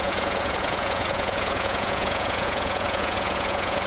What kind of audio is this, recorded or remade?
remade